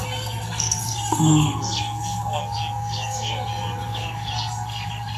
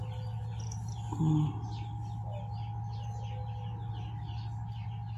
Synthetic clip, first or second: first